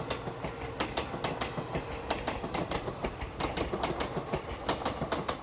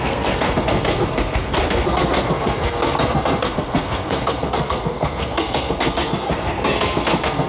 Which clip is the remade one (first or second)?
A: second